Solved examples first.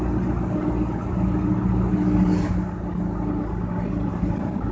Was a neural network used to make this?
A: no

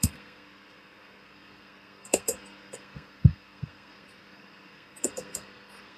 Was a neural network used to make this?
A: yes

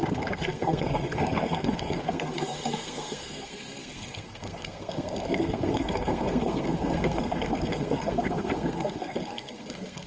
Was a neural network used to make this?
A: yes